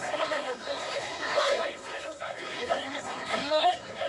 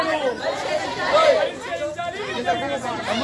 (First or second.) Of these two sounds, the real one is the second